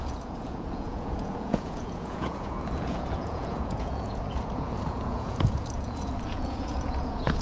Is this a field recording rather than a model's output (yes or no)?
no